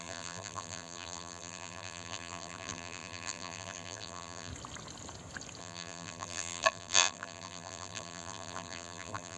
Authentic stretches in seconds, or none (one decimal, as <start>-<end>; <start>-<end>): 4.5-5.6